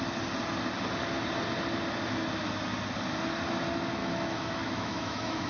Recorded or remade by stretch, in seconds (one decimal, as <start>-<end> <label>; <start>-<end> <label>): 0.0-4.0 recorded; 4.0-5.5 remade